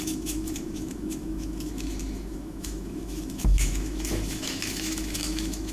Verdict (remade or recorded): remade